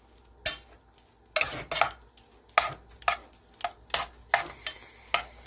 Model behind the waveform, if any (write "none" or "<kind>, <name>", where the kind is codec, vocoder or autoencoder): none